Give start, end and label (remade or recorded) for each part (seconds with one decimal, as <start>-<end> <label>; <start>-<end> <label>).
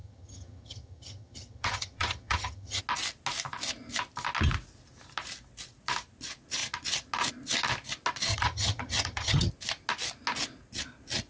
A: 0.0-2.8 remade; 2.8-8.3 recorded; 8.3-9.5 remade; 9.5-11.3 recorded